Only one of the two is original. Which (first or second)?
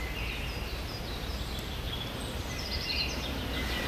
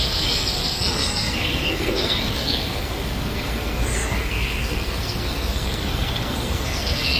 first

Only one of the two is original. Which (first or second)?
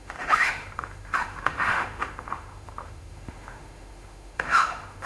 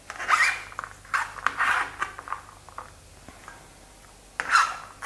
second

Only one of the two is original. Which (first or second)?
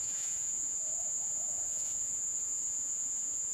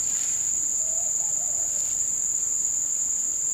second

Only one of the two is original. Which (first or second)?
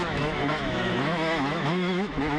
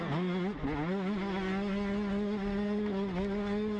second